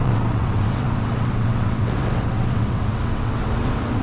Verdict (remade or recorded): remade